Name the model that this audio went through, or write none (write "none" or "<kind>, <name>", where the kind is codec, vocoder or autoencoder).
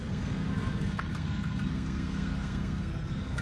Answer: codec, SNAC